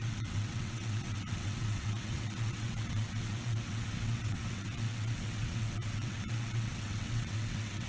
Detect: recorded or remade remade